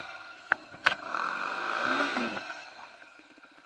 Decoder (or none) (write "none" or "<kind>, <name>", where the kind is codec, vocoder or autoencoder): codec, SNAC